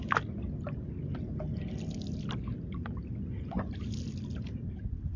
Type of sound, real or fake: real